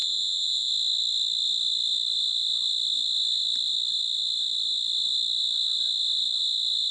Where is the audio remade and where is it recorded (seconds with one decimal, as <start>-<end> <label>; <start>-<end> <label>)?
0.0-0.7 remade; 0.7-6.9 recorded